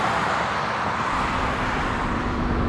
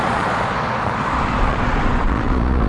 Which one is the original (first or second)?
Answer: first